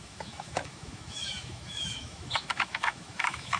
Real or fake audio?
fake